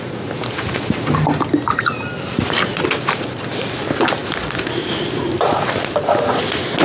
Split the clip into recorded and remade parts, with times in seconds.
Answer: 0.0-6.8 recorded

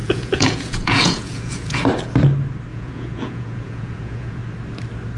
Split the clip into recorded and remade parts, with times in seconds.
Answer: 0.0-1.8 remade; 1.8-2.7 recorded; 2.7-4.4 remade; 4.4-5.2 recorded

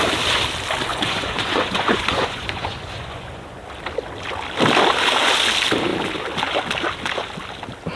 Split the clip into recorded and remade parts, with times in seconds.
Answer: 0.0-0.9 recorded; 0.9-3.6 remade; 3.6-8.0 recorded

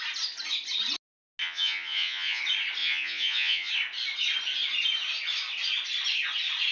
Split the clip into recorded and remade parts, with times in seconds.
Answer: 0.0-1.4 recorded; 1.4-2.4 remade; 2.4-2.8 recorded; 2.8-3.7 remade; 3.7-6.7 recorded